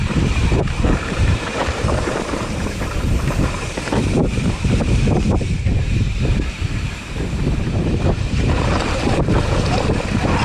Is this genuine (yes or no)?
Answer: no